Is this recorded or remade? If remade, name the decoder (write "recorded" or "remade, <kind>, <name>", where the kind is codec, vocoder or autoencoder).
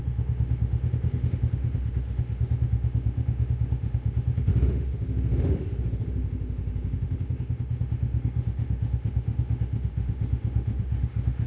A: remade, autoencoder, DAC-VAE